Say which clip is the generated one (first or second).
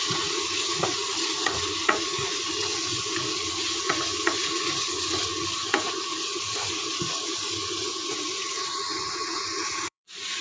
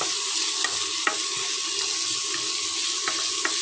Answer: first